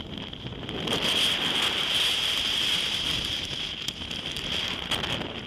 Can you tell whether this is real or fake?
real